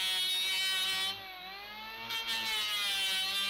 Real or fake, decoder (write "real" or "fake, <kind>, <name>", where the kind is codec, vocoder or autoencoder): real